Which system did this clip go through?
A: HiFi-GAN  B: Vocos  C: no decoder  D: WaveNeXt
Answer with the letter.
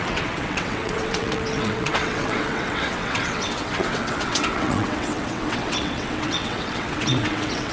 D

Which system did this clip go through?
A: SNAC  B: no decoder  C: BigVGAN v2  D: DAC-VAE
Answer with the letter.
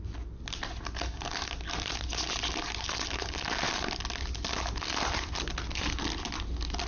B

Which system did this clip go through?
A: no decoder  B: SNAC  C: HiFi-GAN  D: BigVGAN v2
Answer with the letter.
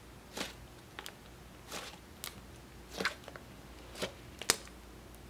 A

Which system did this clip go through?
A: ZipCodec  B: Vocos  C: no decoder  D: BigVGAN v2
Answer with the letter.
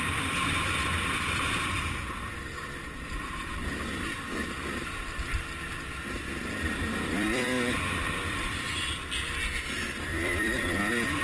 D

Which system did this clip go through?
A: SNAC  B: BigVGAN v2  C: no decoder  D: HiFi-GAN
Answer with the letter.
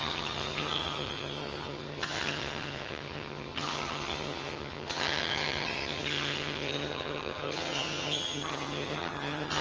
D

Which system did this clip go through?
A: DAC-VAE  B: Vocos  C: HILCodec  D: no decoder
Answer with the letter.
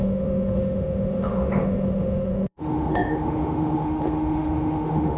A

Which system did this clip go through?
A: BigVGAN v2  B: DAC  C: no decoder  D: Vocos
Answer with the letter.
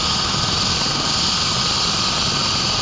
C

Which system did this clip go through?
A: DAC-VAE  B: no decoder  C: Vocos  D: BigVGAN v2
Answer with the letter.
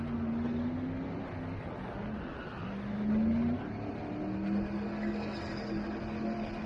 B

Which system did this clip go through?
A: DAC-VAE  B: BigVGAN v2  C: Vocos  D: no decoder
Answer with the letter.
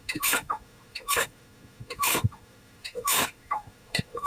A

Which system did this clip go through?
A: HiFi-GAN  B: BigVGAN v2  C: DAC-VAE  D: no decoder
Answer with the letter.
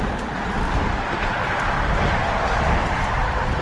B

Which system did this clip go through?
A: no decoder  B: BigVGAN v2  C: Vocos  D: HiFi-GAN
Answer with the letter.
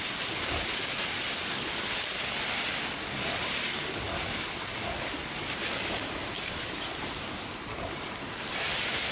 A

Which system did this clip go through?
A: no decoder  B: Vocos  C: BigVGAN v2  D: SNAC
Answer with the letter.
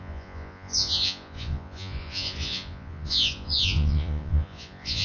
B